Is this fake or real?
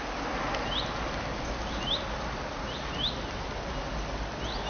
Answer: real